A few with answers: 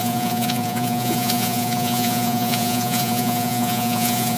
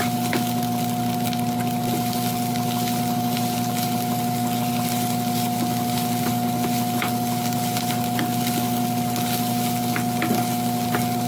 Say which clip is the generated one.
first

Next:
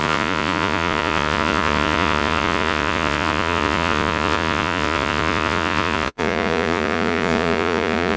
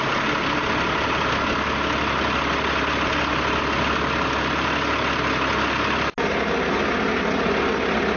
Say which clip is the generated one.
first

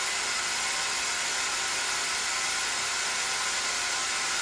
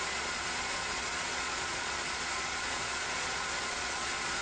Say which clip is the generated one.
second